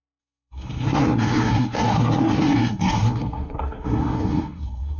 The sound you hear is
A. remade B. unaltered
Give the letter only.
A